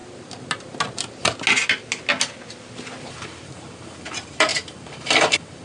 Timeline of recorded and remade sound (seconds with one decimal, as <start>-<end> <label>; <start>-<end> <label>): 0.0-3.0 recorded; 3.0-5.6 remade